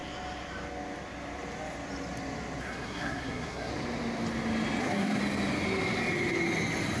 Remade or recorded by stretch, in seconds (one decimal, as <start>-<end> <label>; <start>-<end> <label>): 0.0-2.6 recorded; 2.6-3.7 remade; 3.7-4.8 recorded; 4.8-5.2 remade; 5.2-7.0 recorded